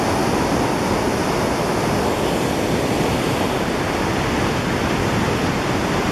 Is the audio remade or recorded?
recorded